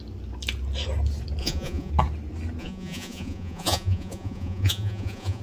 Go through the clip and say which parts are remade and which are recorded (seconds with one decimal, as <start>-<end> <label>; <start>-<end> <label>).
0.0-1.4 recorded; 1.4-1.9 remade; 1.9-2.6 recorded; 2.6-5.4 remade